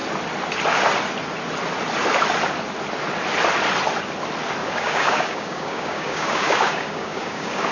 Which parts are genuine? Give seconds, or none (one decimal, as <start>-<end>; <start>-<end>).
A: 0.0-4.6